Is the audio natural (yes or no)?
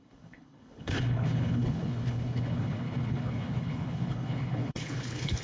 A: no